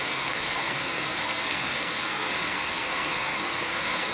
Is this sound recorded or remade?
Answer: remade